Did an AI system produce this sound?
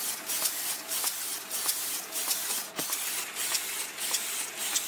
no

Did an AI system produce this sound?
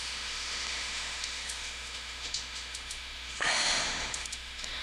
yes